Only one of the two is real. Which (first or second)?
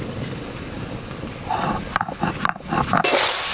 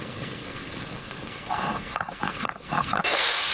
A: first